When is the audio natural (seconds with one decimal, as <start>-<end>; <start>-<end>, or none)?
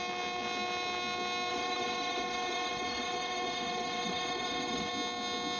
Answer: 0.0-1.5; 4.9-5.6